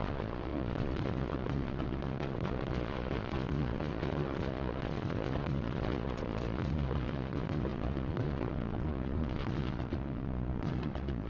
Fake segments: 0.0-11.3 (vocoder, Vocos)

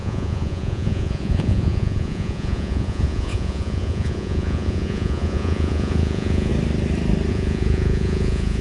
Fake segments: 0.0-6.5 (vocoder, Vocos); 7.3-8.6